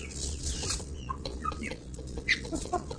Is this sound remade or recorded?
remade